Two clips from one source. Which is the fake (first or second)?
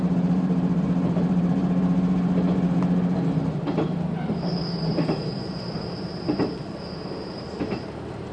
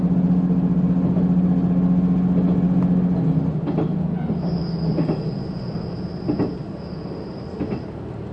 first